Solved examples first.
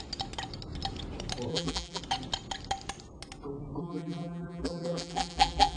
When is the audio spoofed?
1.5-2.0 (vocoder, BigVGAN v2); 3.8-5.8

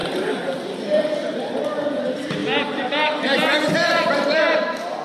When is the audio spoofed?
0.0-2.4 (vocoder, BigVGAN v2); 3.7-5.0

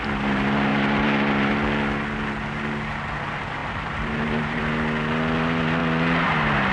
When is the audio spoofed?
3.6-4.6 (vocoder, BigVGAN v2)

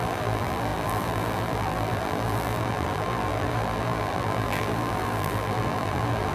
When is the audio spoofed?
0.0-6.3 (vocoder, BigVGAN v2)

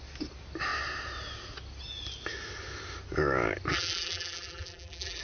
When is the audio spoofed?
3.7-5.2 (vocoder, BigVGAN v2)